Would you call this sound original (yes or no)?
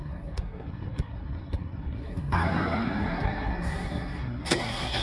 no